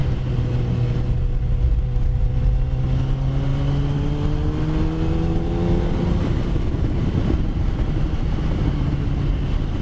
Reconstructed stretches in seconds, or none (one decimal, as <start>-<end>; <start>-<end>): none